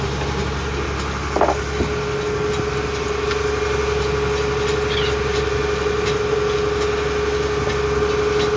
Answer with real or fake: real